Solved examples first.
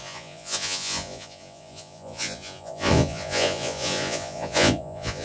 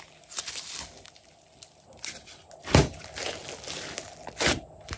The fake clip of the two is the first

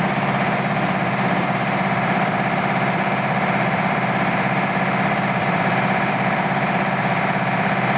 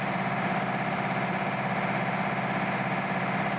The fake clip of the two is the first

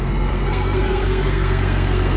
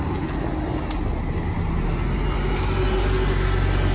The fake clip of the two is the first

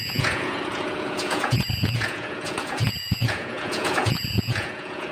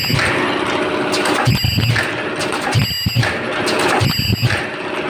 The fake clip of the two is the first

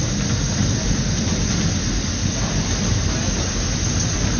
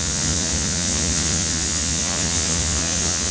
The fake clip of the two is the second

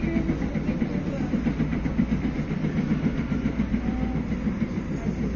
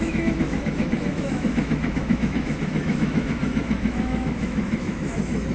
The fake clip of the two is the second